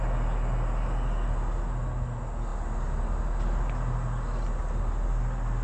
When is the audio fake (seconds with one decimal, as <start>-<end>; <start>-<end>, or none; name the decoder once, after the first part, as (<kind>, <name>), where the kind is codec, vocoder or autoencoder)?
none